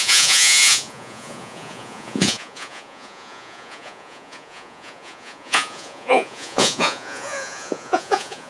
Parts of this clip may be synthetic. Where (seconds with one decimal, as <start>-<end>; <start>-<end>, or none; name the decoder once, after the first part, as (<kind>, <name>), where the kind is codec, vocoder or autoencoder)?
0.0-8.5 (vocoder, Vocos)